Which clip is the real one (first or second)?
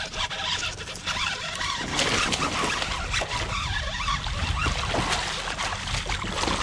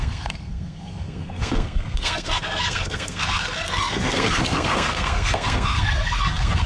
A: first